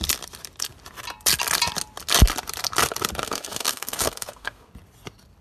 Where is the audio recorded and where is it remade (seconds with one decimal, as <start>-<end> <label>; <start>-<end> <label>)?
0.0-3.2 recorded; 3.2-4.7 remade; 4.7-5.4 recorded

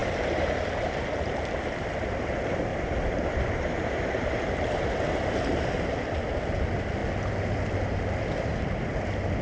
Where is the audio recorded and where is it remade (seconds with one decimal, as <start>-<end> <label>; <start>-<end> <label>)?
0.0-1.0 remade; 1.0-2.7 recorded; 2.7-5.9 remade; 5.9-9.4 recorded